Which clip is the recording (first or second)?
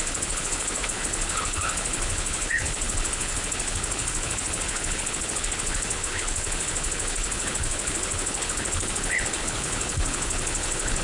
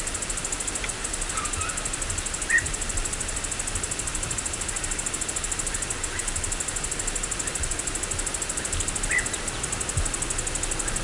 second